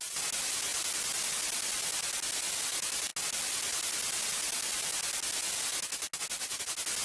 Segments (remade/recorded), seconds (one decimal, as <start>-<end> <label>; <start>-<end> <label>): 0.0-7.0 recorded